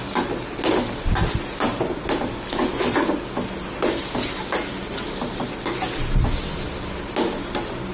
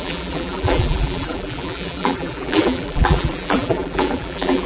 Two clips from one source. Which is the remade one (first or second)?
second